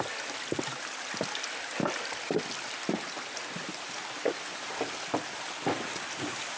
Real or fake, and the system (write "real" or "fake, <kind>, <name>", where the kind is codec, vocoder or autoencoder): real